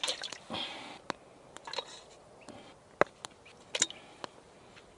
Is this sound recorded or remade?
recorded